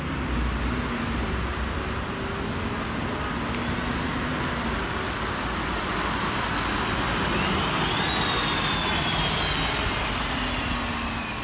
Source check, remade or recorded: recorded